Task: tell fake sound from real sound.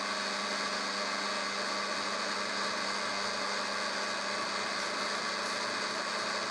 real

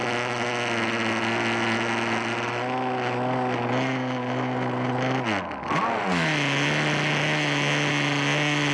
real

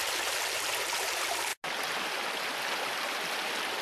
real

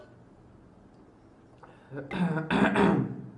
real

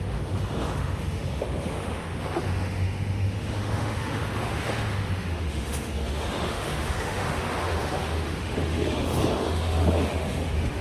fake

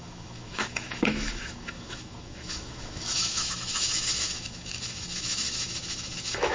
fake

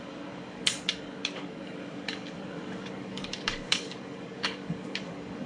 fake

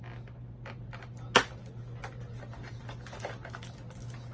real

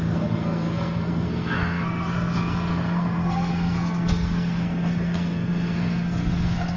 fake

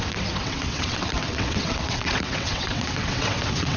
fake